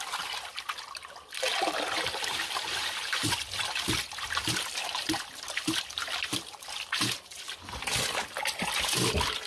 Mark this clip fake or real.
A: real